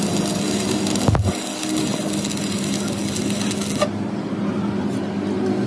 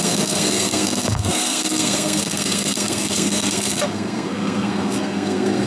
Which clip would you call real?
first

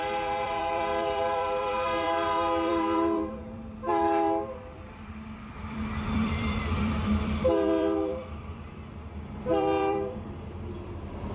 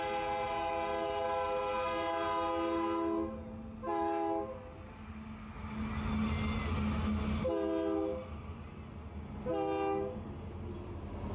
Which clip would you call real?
second